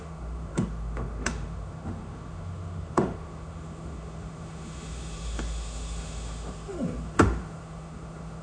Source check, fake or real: fake